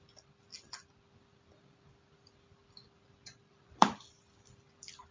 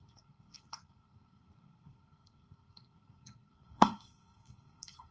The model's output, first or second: second